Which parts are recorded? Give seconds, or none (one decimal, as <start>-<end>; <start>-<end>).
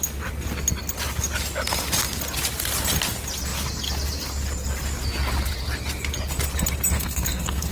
0.0-6.9